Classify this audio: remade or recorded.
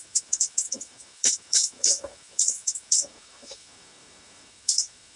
remade